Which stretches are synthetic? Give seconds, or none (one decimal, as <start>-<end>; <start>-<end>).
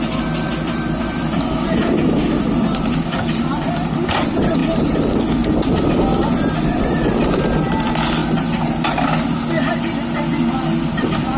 0.0-4.6; 5.8-8.2; 11.0-11.4